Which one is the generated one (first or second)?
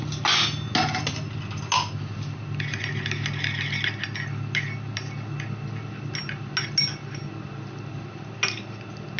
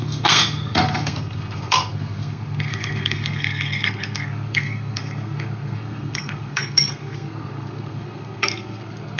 second